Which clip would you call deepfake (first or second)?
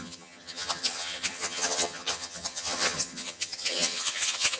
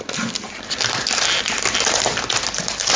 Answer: first